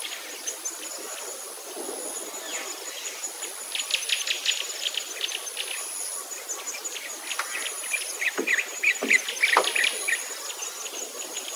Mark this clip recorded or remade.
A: recorded